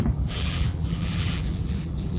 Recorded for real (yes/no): no